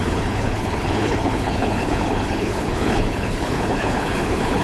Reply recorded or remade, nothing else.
remade